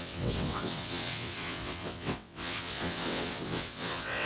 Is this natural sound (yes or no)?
no